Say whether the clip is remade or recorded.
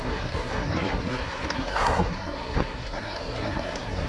remade